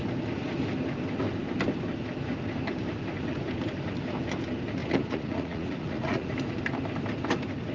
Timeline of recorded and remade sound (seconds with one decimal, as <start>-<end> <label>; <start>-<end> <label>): 0.0-4.8 recorded; 4.8-6.3 remade; 6.3-7.7 recorded